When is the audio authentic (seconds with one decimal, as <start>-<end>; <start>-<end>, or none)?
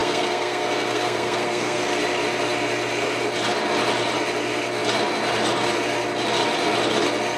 1.8-7.4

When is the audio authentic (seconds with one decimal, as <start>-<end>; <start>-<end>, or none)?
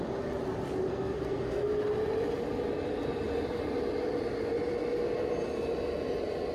0.0-0.9; 1.6-6.5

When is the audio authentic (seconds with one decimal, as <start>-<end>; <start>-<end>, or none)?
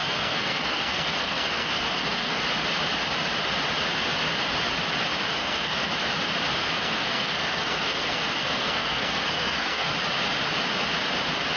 2.4-5.4; 5.9-6.6; 9.9-11.6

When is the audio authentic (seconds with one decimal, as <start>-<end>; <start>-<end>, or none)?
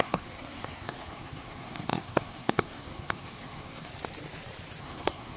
3.9-4.8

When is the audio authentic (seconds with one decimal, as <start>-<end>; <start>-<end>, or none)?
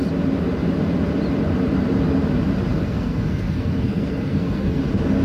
0.0-2.7; 4.8-5.2